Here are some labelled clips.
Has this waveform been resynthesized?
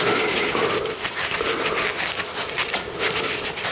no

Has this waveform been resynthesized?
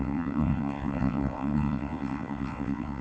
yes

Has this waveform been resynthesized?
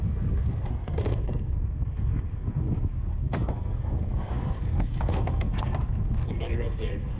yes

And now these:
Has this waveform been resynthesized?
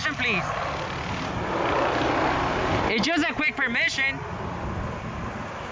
no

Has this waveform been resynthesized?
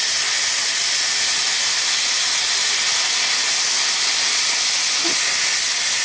no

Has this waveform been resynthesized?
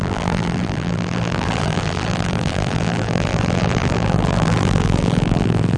yes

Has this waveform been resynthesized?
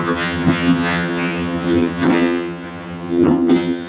yes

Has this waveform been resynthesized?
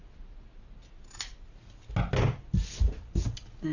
no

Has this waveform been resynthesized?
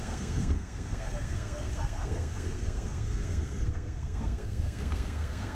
yes